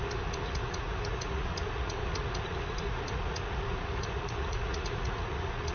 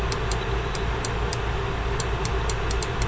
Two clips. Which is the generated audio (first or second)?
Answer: first